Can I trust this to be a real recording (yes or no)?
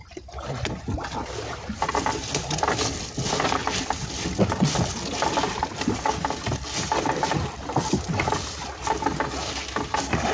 yes